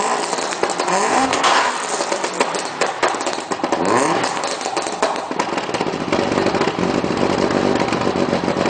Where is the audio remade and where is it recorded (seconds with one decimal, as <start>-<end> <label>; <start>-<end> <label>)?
0.0-1.1 recorded; 1.1-1.7 remade; 1.7-8.7 recorded